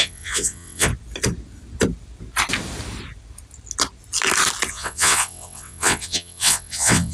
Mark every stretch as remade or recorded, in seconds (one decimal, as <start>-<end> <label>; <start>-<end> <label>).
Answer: 0.0-0.9 remade; 0.9-4.7 recorded; 4.7-7.1 remade